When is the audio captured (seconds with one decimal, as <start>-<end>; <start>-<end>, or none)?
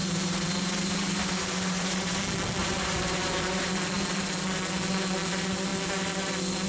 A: 2.2-2.6; 3.7-6.7